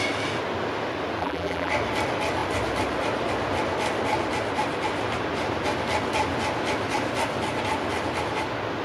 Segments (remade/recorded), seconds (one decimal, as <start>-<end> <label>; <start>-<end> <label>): 0.0-1.2 recorded; 1.2-1.7 remade; 1.7-8.8 recorded